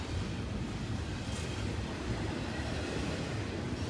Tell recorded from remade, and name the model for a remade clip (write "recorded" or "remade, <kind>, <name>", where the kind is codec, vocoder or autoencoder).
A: remade, vocoder, BigVGAN v2